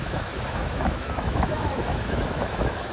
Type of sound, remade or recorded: remade